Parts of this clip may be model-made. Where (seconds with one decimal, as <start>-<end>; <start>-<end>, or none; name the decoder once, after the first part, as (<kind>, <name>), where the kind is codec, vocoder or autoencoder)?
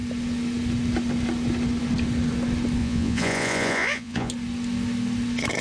2.8-4.3 (vocoder, Vocos)